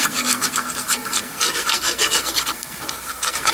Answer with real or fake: fake